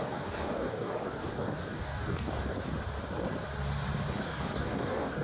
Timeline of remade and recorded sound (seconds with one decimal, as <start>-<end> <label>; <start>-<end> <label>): 0.0-2.5 remade; 2.5-4.1 recorded; 4.1-5.2 remade

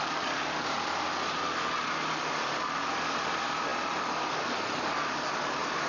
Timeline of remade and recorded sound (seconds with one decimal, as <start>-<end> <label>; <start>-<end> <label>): 0.0-1.4 remade; 1.4-2.2 recorded; 2.2-5.9 remade